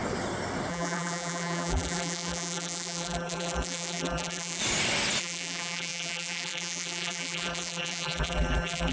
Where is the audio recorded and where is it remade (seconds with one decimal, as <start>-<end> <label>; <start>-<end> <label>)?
0.0-0.7 recorded; 0.7-4.6 remade; 4.6-5.2 recorded; 5.2-8.9 remade